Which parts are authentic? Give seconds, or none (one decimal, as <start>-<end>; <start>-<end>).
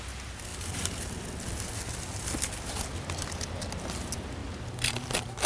0.0-4.4